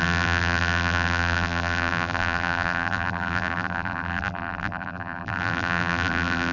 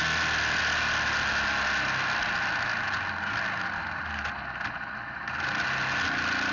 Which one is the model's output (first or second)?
first